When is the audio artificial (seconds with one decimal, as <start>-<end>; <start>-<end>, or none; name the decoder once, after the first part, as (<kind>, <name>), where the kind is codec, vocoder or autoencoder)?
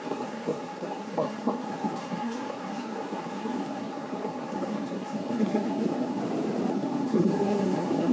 0.0-6.2 (codec, SNAC); 6.7-8.1